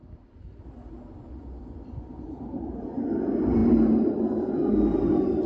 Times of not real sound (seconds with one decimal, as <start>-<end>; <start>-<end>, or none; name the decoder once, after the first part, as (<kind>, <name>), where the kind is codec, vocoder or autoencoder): none